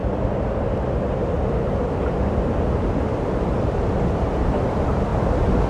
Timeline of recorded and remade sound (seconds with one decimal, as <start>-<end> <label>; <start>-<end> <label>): 0.0-2.6 recorded; 2.6-5.7 remade